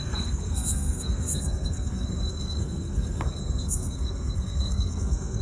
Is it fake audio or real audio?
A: fake